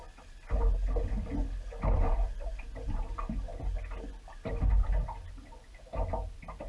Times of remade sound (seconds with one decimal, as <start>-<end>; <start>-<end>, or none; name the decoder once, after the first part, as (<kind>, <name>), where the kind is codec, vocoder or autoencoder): none